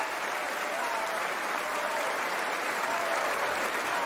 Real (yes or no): no